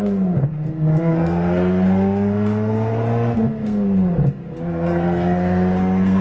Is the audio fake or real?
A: fake